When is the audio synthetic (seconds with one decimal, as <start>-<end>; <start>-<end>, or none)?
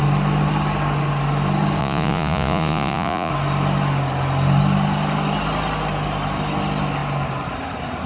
1.8-3.3